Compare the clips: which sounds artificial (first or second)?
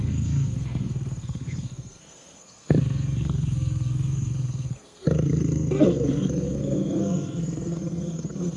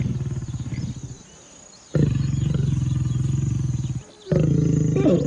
first